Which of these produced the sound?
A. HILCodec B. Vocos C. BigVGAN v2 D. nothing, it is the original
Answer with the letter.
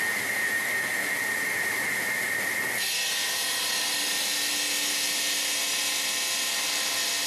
D